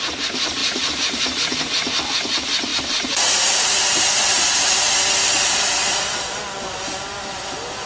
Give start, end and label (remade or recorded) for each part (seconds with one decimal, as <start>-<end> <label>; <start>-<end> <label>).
0.0-0.6 recorded; 0.6-1.6 remade; 1.6-2.7 recorded; 2.7-4.8 remade; 4.8-7.9 recorded